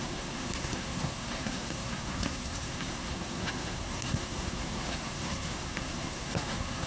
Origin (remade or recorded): remade